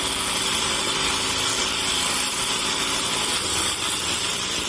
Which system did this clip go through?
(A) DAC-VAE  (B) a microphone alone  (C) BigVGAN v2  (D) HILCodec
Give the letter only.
B